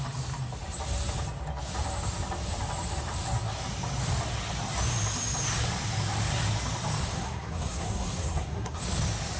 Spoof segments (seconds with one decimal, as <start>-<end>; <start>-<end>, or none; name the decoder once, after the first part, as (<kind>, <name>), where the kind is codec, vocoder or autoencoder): 7.1-8.8 (codec, SNAC)